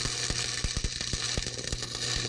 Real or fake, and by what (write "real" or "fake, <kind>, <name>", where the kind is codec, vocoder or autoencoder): real